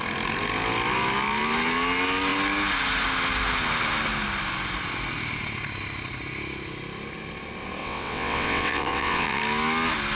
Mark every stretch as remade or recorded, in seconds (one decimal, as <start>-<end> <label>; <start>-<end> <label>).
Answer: 0.0-7.8 recorded; 7.8-9.4 remade; 9.4-10.1 recorded